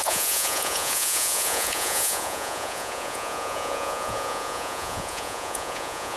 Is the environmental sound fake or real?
fake